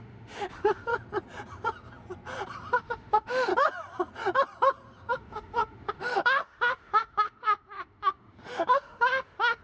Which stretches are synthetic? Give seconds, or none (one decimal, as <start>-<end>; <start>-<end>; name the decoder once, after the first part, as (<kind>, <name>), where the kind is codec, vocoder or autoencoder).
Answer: 0.0-0.9 (autoencoder, DAC-VAE); 2.8-3.5; 5.1-9.6

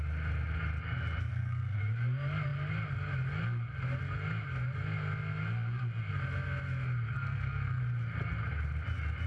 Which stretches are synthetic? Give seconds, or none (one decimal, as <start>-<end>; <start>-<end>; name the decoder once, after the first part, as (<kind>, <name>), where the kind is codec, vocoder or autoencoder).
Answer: 1.3-1.8 (codec, SNAC); 7.1-7.8